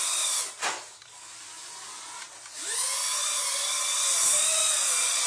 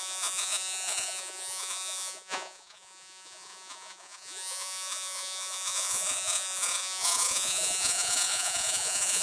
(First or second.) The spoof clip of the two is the second